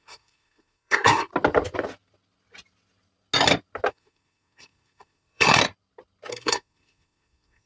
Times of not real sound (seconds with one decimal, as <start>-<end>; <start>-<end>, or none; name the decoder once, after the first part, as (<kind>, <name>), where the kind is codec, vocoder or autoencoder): 0.0-1.3 (codec, SNAC); 3.9-5.6; 6.3-7.7

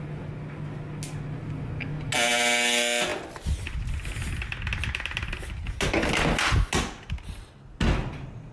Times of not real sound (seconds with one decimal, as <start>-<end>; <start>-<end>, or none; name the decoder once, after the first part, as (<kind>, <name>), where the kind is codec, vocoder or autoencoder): none